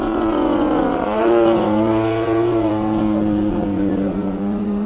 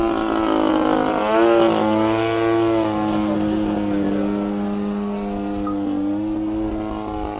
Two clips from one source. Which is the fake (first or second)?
first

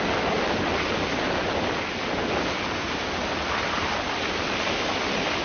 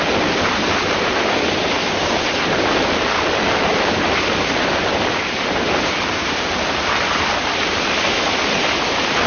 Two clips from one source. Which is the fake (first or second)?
second